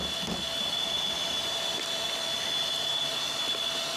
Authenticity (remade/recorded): recorded